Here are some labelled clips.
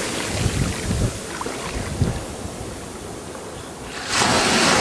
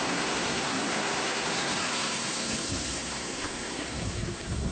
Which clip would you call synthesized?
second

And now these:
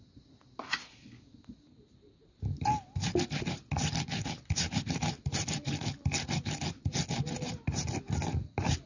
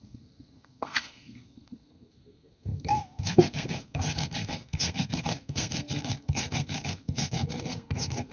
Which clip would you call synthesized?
second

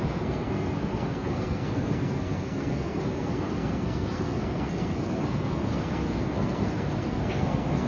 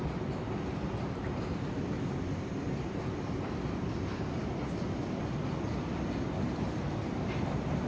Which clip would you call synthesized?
first